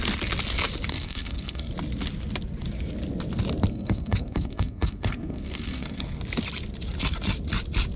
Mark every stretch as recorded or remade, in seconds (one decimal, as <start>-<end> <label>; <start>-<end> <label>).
0.0-0.9 recorded; 0.9-1.7 remade; 1.7-3.7 recorded; 3.7-6.2 remade; 6.2-8.0 recorded